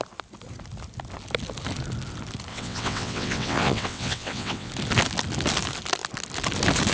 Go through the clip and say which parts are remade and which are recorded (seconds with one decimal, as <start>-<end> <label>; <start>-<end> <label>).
0.0-2.5 recorded; 2.5-4.7 remade; 4.7-6.9 recorded